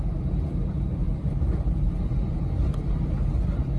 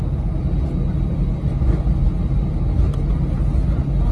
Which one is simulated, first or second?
first